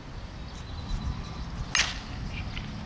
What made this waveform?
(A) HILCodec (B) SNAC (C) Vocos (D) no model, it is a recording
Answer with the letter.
D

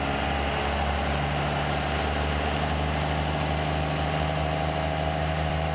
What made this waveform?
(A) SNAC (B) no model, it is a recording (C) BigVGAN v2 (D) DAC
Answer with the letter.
B